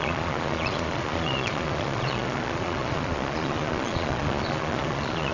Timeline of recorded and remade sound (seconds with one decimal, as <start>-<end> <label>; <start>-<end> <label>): 0.0-5.3 remade